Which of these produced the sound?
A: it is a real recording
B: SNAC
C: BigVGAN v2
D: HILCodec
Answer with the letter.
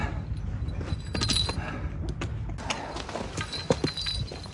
A